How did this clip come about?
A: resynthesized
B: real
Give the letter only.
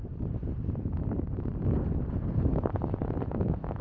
B